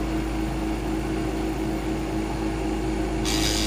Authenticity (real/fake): real